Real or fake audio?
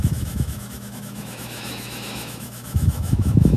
fake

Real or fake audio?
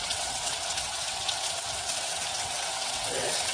fake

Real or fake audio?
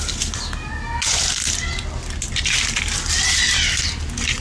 real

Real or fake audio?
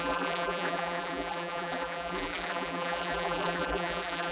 fake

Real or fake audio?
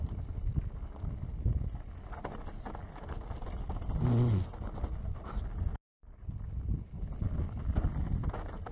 real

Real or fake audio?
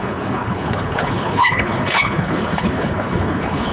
fake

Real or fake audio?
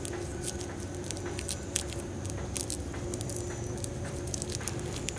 real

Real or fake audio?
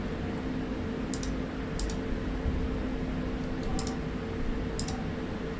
real